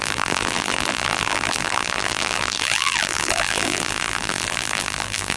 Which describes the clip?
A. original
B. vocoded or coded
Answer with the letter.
B